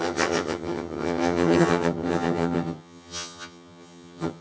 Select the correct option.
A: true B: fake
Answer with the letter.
B